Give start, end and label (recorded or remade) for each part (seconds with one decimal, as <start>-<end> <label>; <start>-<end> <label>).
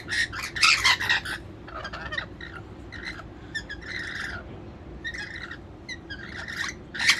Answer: 0.0-7.2 recorded